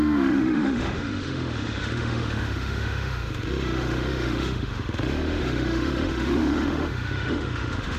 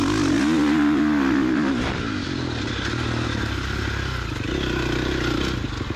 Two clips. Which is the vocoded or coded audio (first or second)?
first